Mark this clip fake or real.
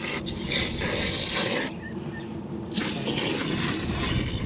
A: real